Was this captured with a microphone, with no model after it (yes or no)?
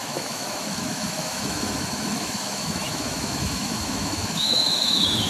no